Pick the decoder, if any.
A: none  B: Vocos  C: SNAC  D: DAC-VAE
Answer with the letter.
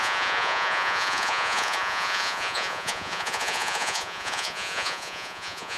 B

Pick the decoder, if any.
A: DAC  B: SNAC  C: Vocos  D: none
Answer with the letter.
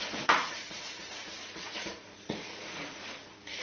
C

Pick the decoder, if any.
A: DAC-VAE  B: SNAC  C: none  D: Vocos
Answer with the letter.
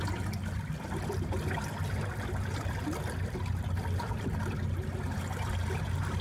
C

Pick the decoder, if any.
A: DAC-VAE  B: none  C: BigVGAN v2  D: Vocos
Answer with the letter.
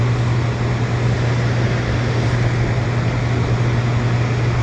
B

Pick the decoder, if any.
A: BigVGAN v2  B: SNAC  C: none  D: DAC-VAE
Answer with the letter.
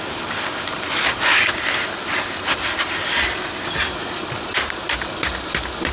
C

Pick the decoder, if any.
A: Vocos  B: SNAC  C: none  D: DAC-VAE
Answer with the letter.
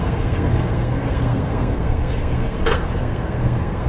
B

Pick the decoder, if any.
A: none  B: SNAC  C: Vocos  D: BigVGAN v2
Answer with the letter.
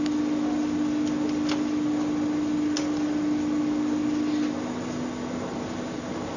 A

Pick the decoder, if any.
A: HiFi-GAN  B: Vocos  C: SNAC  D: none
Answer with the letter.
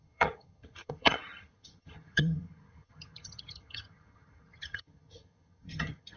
A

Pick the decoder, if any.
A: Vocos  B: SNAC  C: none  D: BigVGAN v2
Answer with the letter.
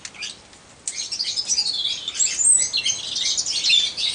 C